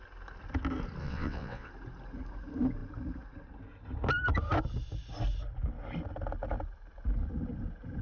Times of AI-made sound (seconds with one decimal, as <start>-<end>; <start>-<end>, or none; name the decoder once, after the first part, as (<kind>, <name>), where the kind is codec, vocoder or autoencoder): 1.0-1.7 (vocoder, WaveNeXt)

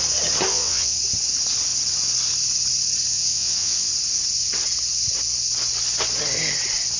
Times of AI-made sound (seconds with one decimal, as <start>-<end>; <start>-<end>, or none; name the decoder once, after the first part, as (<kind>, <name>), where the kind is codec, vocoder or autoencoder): 0.5-1.0 (vocoder, WaveNeXt); 3.1-3.9

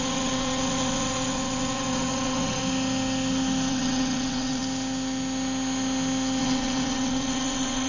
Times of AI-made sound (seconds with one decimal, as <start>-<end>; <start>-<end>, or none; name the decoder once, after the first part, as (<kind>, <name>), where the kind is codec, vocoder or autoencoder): 0.0-2.6 (vocoder, WaveNeXt); 3.7-4.6; 6.4-7.9

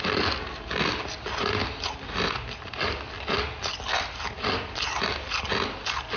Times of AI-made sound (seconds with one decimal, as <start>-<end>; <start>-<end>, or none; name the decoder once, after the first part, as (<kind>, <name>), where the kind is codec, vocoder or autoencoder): none